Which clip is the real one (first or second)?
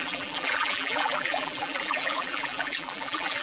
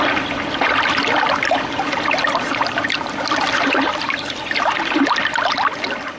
second